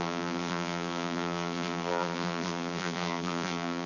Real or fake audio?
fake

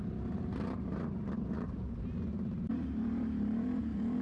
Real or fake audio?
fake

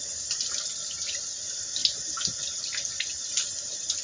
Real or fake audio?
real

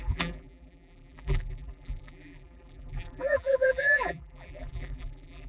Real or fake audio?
fake